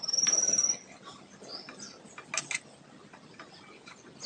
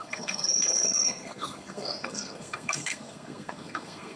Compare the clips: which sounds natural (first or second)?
first